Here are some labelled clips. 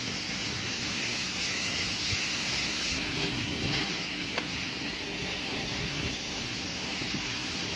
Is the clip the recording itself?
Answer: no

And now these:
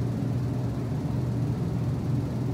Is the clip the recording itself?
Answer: no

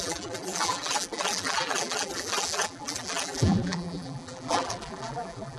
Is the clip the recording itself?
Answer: no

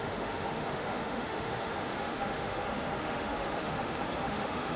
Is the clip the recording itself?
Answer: no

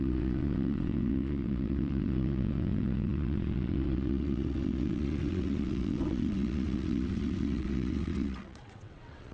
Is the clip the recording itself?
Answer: no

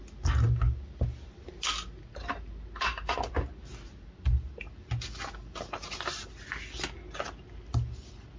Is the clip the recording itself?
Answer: yes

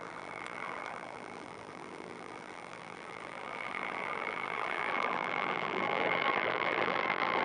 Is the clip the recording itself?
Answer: no